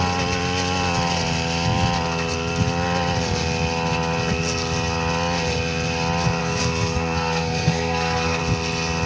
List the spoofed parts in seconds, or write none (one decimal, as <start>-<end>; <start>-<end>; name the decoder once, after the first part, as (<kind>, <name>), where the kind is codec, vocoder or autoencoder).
6.4-8.4 (codec, SNAC)